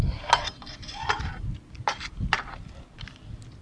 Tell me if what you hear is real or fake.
real